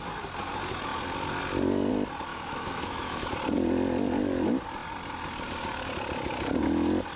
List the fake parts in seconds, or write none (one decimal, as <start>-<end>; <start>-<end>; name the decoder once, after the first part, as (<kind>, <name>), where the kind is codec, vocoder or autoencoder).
2.3-3.3 (autoencoder, DAC-VAE)